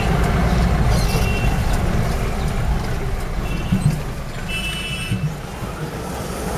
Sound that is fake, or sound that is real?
real